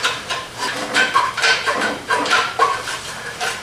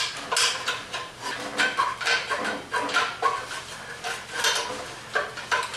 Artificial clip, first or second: first